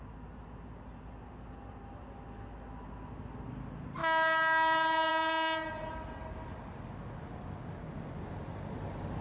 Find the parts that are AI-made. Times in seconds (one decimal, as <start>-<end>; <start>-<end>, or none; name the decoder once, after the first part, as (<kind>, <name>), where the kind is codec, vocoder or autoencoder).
none

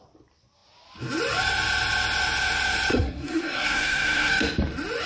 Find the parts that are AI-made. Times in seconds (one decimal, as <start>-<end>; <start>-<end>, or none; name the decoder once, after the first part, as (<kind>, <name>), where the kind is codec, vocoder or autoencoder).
2.9-4.3 (codec, SNAC)

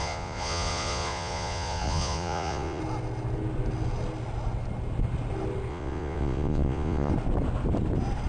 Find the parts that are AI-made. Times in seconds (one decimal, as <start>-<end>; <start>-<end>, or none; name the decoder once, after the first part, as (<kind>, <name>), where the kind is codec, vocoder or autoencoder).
0.0-2.8 (vocoder, Vocos); 5.7-7.1

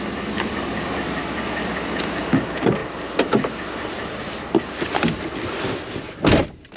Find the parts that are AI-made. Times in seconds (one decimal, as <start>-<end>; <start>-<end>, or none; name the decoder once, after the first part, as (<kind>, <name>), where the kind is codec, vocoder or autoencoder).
none

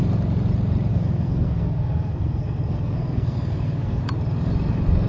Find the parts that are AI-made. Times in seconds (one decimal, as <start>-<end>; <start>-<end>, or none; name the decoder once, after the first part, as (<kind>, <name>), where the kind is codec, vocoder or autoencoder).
0.9-4.0 (codec, SNAC)

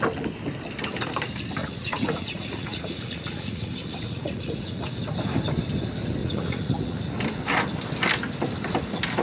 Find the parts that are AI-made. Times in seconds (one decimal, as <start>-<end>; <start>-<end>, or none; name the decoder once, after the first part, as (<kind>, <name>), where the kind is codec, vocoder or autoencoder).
1.6-4.9 (vocoder, Vocos); 6.2-7.0

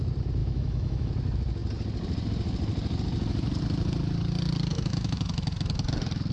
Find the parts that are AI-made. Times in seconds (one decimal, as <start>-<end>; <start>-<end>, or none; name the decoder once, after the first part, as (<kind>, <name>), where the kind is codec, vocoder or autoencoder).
0.4-1.1 (autoencoder, DAC-VAE); 4.7-5.3